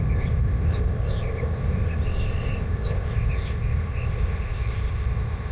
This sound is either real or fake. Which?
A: fake